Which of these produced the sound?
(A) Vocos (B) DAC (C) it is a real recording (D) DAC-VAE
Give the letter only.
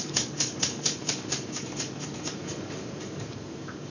B